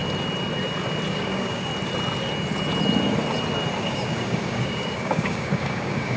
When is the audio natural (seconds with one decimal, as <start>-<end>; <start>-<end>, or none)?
0.0-1.1; 1.7-3.8